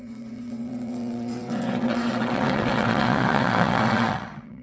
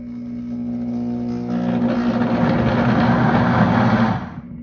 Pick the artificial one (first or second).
first